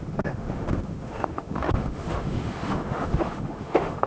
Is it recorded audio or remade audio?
remade